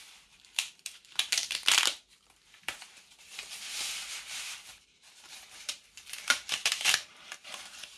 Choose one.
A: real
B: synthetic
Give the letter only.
B